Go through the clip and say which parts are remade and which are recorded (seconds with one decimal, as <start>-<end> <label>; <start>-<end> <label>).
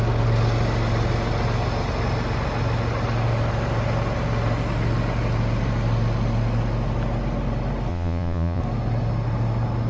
0.0-7.9 recorded; 7.9-8.6 remade; 8.6-9.9 recorded